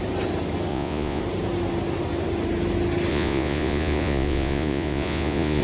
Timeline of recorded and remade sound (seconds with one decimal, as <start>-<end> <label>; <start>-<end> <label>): 0.0-0.7 recorded; 0.7-1.2 remade; 1.2-3.1 recorded; 3.1-5.6 remade